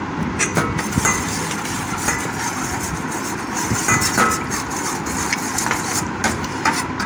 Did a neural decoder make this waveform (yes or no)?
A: no